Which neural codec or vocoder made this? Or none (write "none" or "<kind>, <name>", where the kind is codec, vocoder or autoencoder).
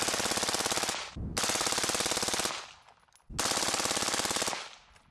none